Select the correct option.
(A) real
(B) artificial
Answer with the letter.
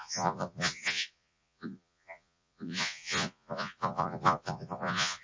B